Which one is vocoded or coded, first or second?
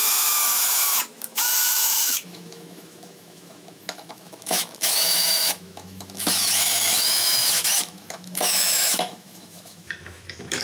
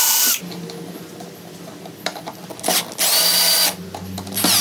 first